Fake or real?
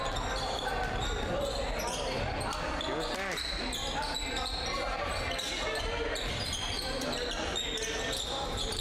real